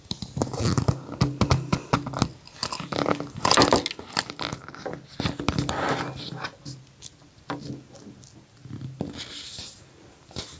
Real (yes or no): yes